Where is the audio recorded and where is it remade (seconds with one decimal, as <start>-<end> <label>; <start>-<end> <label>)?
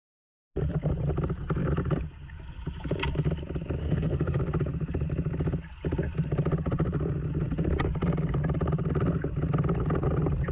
0.0-3.8 recorded; 3.8-4.4 remade; 4.4-10.5 recorded